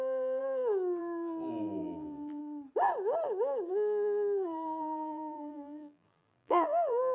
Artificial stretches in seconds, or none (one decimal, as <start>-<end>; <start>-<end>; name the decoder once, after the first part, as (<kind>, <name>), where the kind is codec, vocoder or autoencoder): 0.0-0.4 (vocoder, BigVGAN v2); 1.0-2.4; 3.7-7.1